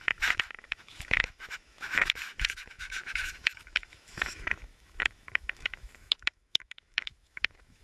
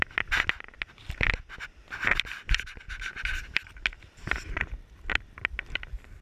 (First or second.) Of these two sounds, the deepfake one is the first